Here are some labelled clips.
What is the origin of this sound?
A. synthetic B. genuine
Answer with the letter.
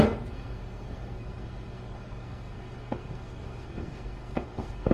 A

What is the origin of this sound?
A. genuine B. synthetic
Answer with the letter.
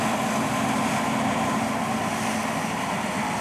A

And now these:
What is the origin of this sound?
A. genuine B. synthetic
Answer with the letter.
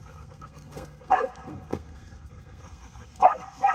B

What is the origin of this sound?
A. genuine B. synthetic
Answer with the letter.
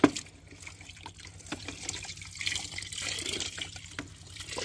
A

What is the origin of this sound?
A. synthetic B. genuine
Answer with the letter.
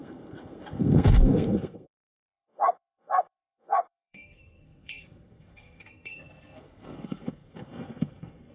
A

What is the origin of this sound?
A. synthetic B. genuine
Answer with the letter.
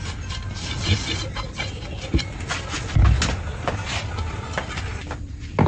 B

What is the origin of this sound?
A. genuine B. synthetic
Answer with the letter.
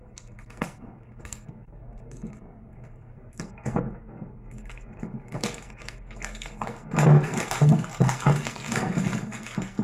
B